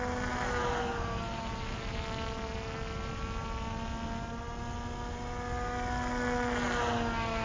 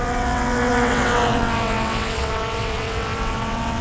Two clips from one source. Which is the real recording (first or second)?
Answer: first